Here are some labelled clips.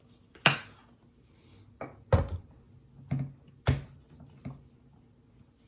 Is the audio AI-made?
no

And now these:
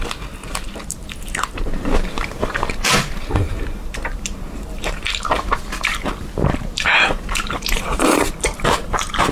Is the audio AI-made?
yes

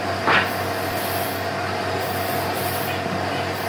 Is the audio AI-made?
no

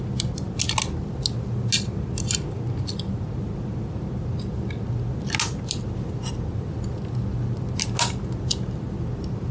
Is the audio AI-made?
no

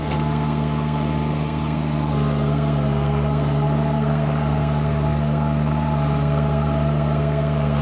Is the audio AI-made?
yes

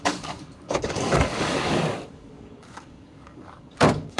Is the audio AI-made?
yes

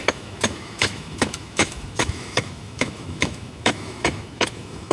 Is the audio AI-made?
yes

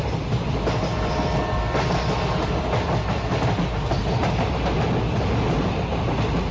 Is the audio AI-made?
no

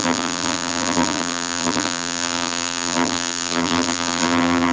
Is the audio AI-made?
yes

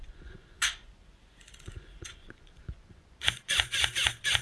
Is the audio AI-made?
yes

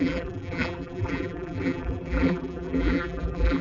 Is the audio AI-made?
yes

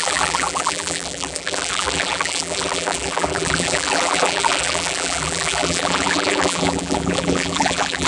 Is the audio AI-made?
yes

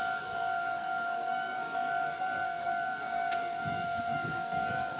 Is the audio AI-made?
yes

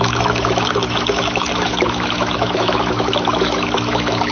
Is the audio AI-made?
yes